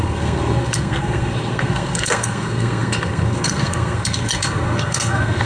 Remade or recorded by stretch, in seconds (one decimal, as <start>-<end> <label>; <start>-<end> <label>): 0.0-5.5 remade